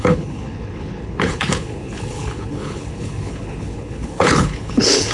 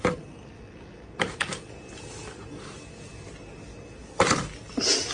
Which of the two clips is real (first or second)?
second